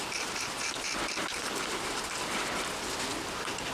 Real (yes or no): yes